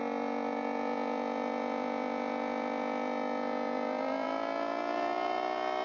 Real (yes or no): no